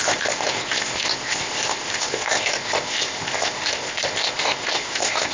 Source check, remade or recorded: remade